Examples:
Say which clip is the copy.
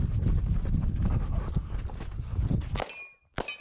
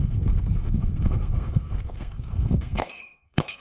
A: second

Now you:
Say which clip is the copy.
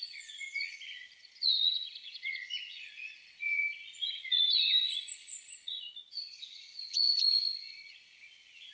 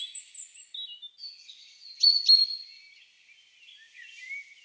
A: first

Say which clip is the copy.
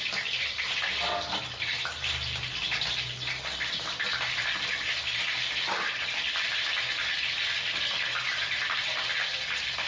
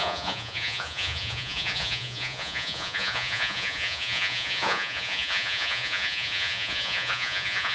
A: second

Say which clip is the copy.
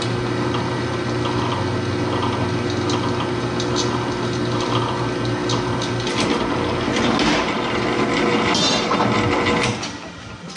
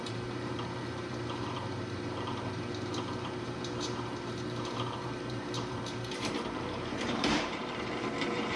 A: second